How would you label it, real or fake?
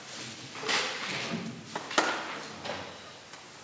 real